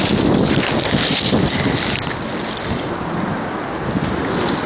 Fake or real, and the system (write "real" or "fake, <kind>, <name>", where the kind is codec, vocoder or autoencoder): real